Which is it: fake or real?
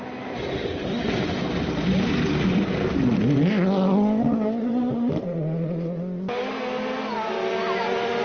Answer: real